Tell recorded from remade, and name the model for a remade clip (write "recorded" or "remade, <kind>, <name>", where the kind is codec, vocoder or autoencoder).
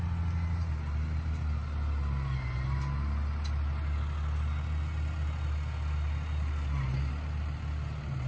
recorded